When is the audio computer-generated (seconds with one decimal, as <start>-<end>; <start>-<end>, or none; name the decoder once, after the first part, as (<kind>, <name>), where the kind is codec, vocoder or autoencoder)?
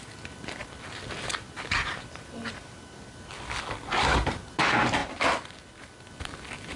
none